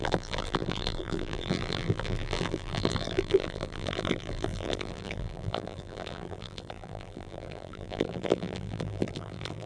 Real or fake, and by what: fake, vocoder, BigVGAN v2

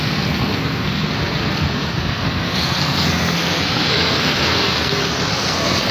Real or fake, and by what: fake, codec, SNAC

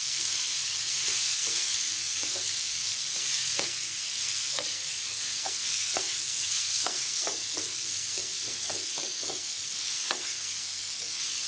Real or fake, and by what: fake, codec, SNAC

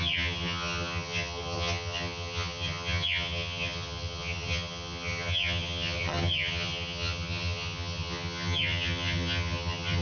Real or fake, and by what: fake, vocoder, HiFi-GAN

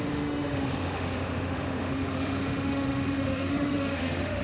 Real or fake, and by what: fake, autoencoder, DAC-VAE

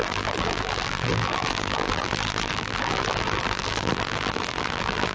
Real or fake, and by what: fake, vocoder, BigVGAN v2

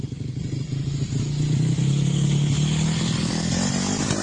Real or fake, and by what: real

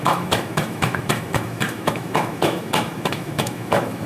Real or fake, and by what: fake, autoencoder, DAC-VAE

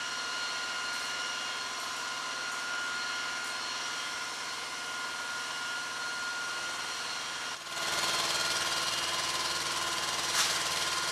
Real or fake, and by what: real